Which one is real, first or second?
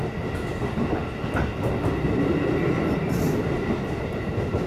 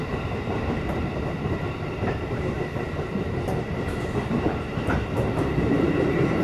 first